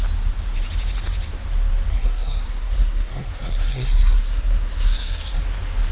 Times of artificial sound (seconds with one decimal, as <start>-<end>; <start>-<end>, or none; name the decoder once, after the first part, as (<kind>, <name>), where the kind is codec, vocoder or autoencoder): 1.9-5.4 (codec, SNAC)